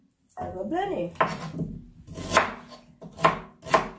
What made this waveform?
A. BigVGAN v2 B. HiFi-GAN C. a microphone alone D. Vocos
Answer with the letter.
C